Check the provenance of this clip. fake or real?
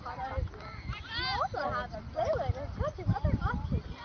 real